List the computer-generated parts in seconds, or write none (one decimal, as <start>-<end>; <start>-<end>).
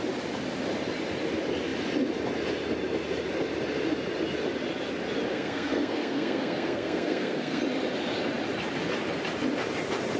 5.3-7.6